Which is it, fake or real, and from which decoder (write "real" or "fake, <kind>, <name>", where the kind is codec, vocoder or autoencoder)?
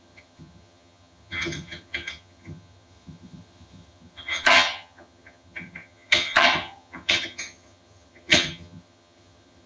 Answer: fake, vocoder, HiFi-GAN